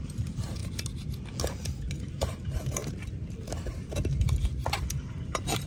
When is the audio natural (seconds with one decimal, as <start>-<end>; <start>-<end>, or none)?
0.6-2.1; 2.8-5.1